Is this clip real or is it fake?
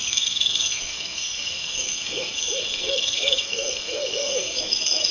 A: fake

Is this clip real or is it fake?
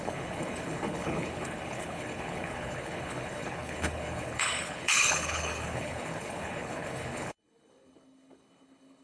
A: fake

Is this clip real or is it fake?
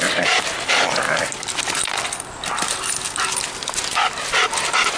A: real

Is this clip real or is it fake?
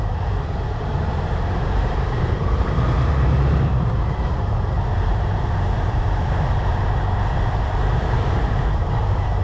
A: fake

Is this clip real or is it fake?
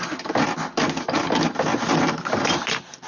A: real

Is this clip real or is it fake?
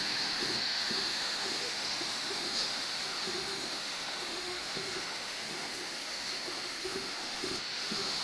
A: fake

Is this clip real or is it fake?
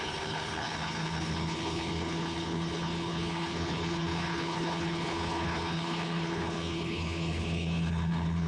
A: fake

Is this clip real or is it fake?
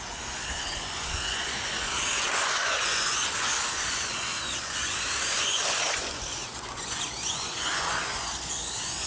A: fake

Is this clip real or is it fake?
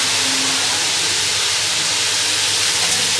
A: real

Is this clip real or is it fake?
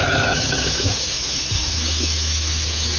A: fake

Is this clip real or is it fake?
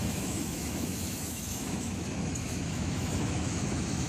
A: fake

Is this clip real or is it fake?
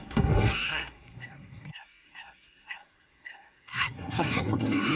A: fake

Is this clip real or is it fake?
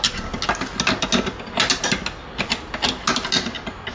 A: real